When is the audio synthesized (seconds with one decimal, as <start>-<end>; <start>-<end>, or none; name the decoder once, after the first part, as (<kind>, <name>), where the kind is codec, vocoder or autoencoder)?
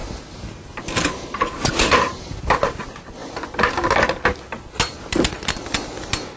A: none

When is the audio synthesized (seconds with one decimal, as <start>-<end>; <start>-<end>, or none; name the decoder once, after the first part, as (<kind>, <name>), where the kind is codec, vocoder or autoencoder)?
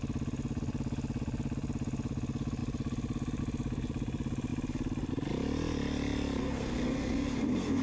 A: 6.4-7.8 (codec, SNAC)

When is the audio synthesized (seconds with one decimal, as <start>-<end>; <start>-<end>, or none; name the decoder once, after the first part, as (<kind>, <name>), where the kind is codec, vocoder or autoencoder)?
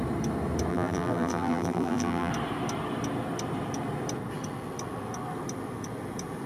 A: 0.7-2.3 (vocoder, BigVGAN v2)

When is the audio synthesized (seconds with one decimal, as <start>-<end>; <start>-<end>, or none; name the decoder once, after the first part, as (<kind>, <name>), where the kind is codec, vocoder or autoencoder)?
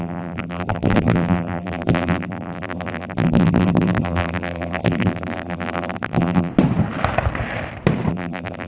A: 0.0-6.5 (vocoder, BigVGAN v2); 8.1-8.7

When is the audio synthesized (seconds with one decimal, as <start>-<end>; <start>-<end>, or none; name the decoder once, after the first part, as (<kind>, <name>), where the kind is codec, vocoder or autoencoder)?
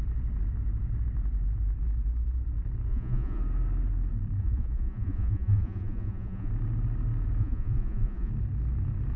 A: 2.9-3.4 (vocoder, Vocos); 4.4-6.5; 7.4-8.3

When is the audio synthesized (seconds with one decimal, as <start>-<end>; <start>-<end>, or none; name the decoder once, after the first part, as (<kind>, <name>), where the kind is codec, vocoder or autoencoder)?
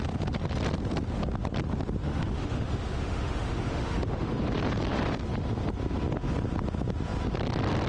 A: 2.0-4.3 (autoencoder, DAC-VAE)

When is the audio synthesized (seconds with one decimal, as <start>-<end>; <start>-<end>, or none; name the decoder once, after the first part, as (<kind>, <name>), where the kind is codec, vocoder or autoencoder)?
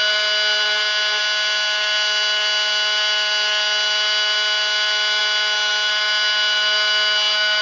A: none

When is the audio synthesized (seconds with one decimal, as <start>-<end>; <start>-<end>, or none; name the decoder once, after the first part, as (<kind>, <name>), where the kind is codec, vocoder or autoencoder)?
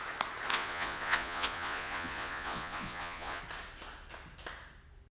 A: 0.5-3.4 (vocoder, Vocos)